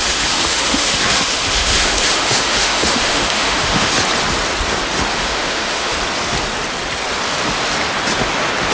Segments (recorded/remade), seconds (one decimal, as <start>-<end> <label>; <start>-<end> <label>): 0.0-3.9 remade; 3.9-5.1 recorded; 5.1-5.9 remade; 5.9-8.7 recorded